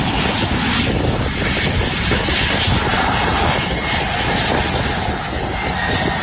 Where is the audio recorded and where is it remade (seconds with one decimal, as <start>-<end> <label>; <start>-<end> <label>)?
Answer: 0.0-6.2 recorded